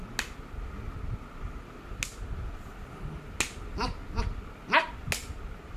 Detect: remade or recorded recorded